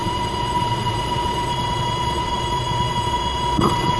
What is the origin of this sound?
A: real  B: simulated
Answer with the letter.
B